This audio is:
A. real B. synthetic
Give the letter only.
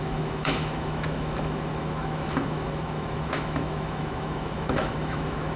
B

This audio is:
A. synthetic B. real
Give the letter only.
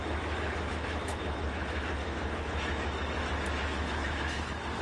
A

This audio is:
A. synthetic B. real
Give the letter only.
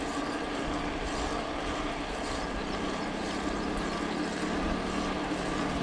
B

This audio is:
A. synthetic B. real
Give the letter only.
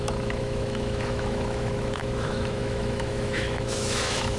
A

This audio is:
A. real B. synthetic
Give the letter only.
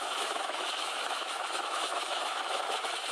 B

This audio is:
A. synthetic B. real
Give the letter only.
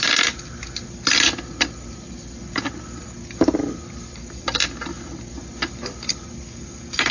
B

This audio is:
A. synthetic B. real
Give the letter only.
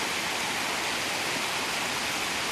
B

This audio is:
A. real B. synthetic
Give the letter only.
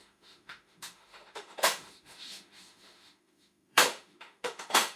B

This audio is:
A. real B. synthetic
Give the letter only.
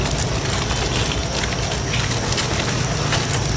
A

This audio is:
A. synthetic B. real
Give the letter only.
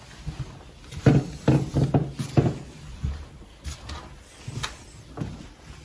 B